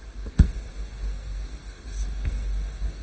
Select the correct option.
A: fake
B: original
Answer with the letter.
A